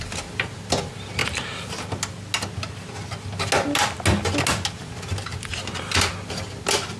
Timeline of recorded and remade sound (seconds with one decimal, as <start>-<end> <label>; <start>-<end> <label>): 0.0-1.2 remade; 1.2-5.4 recorded; 5.4-7.0 remade